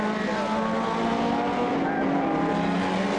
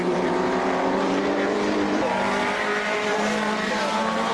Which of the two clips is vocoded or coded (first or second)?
second